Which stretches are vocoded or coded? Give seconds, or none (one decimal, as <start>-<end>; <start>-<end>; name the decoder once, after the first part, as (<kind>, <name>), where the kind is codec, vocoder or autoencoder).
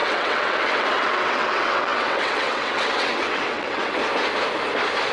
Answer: 0.0-4.0 (vocoder, WaveNeXt)